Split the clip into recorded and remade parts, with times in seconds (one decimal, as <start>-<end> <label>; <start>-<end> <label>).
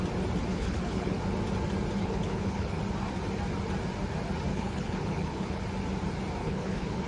0.0-0.5 recorded; 0.5-1.2 remade; 1.2-2.0 recorded; 2.0-2.8 remade; 2.8-4.5 recorded; 4.5-5.6 remade; 5.6-6.4 recorded; 6.4-7.1 remade